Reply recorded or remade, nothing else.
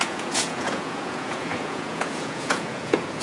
remade